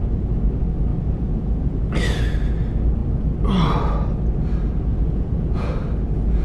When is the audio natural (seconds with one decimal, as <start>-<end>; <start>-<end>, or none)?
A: 0.0-0.9; 1.8-4.9; 5.7-6.4